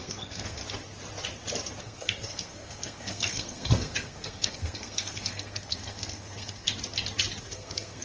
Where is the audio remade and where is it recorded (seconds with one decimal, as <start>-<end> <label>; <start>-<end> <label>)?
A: 0.0-0.6 remade; 0.6-1.8 recorded; 1.8-6.7 remade; 6.7-7.4 recorded; 7.4-8.0 remade